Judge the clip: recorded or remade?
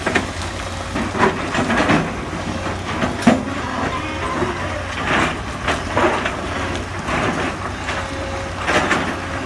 recorded